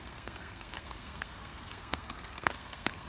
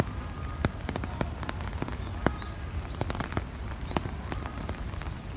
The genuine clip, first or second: second